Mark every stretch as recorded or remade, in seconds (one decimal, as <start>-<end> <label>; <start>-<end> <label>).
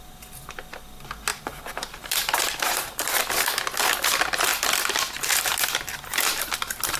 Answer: 0.0-1.3 recorded; 1.3-3.2 remade; 3.2-7.0 recorded